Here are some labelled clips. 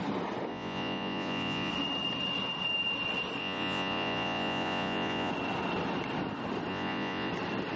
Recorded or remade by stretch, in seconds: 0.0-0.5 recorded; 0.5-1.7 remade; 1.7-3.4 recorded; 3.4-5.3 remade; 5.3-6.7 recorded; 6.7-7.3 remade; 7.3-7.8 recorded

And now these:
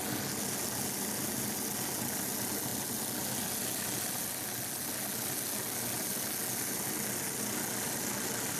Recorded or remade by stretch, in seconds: 0.0-8.6 recorded

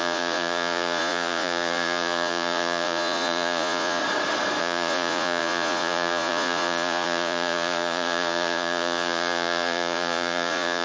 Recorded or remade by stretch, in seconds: 0.0-4.0 remade; 4.0-4.6 recorded; 4.6-10.8 remade

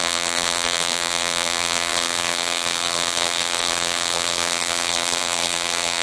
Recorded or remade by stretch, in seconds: 0.0-6.0 remade

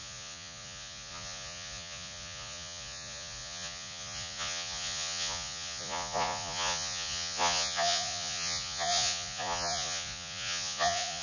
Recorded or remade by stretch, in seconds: 0.0-11.2 remade

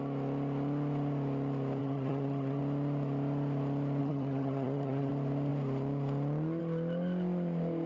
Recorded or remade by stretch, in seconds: 0.0-1.8 recorded; 1.8-2.6 remade; 2.6-4.0 recorded; 4.0-5.1 remade; 5.1-7.9 recorded

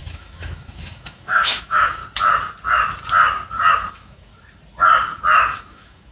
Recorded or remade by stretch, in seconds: 0.0-2.0 remade; 2.0-3.9 recorded; 3.9-4.3 remade; 4.3-5.5 recorded; 5.5-6.1 remade

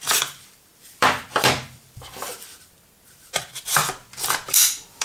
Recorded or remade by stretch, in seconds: 0.0-3.8 remade; 3.8-4.6 recorded; 4.6-5.0 remade